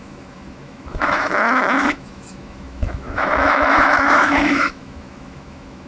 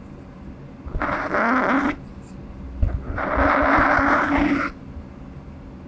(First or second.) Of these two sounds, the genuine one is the second